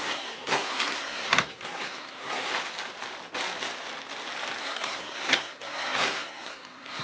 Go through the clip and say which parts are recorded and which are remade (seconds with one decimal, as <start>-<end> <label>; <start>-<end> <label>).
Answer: 0.0-2.5 remade; 2.5-4.6 recorded; 4.6-7.0 remade